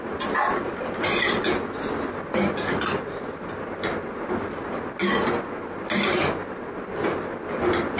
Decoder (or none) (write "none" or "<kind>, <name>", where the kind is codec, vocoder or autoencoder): none